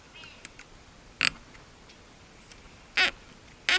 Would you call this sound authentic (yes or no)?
yes